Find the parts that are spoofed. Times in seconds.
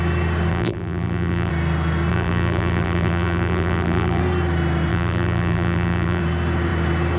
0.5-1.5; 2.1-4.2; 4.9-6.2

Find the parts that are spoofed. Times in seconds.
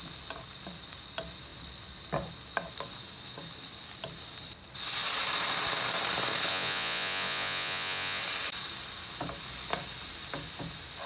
6.5-8.2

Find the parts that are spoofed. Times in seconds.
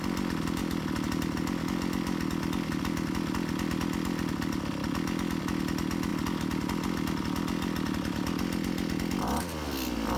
none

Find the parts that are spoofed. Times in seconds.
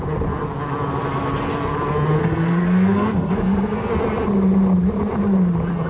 2.2-3.9